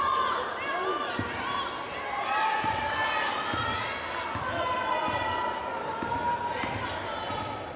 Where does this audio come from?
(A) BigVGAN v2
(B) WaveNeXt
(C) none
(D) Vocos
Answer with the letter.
C